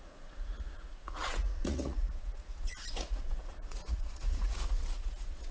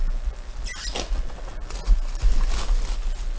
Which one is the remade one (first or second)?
first